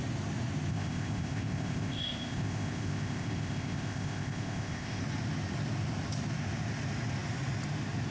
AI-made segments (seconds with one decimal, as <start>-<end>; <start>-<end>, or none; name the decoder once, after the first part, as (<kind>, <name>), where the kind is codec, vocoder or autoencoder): 0.7-5.0 (codec, ZipCodec)